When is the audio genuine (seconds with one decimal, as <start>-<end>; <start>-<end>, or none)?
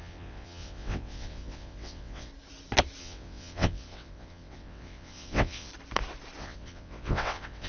2.3-3.0; 5.7-6.4